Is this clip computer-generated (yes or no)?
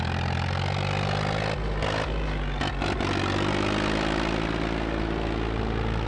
no